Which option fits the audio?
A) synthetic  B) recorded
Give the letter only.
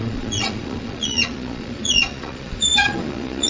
A